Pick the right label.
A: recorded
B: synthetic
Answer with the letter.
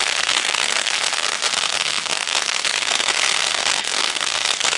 B